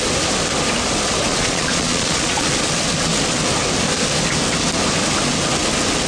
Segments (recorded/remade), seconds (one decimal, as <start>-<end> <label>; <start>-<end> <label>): 0.0-1.3 recorded; 1.3-2.5 remade; 2.5-6.1 recorded